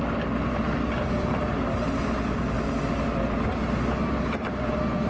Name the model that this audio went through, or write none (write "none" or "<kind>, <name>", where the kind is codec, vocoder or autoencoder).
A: none